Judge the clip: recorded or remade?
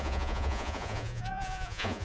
remade